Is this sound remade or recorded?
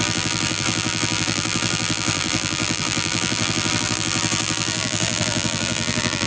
remade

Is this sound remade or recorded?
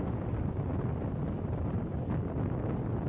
recorded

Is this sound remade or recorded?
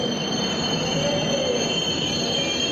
recorded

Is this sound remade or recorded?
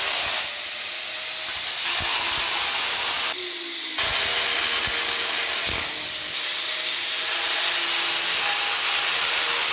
recorded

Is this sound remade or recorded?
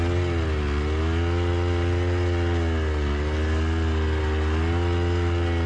recorded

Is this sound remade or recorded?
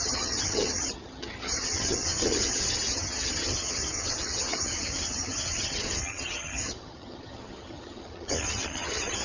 remade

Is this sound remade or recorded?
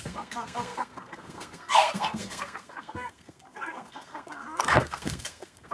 remade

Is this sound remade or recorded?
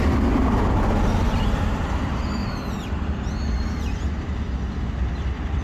recorded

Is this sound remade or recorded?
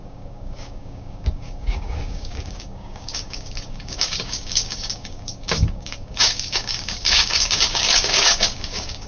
remade